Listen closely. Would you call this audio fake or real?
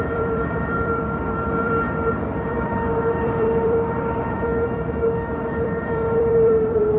fake